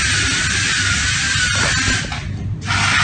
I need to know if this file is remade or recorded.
recorded